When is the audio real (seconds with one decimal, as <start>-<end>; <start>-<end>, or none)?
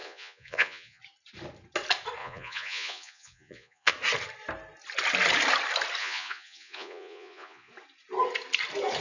1.0-2.2; 3.9-6.0; 7.7-9.0